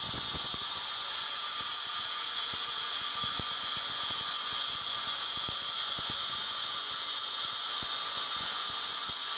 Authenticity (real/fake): fake